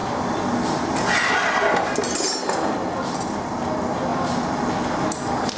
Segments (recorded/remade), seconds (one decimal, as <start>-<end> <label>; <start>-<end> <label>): 0.0-5.6 recorded